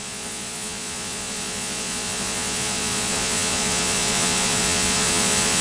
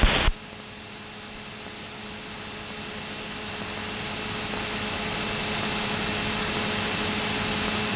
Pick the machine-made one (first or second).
first